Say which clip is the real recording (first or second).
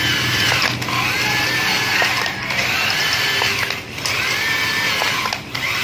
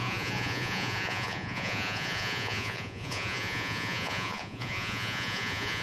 first